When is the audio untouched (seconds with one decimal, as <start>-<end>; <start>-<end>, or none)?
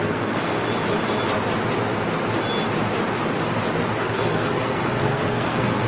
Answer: 0.5-4.0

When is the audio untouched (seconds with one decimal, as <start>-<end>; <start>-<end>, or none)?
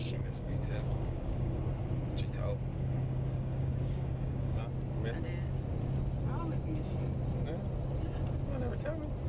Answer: 1.6-2.7; 4.6-9.3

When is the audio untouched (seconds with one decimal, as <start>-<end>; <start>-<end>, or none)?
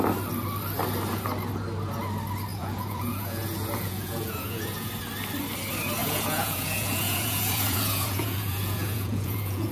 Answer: 0.0-2.5; 4.9-6.0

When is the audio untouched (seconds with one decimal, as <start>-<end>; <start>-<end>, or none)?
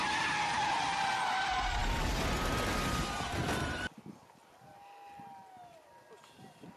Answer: 0.0-6.8